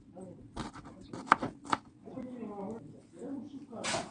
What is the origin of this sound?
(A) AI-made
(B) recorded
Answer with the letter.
B